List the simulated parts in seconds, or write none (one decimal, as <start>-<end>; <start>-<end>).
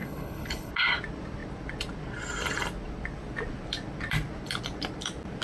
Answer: 0.0-0.7